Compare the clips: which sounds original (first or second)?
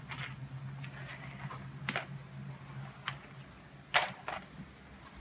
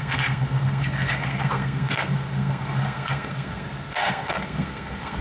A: first